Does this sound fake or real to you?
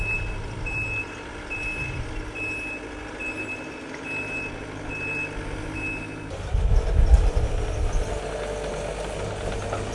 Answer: real